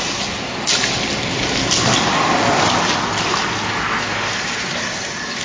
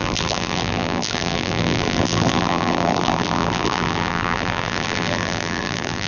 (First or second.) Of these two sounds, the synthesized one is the second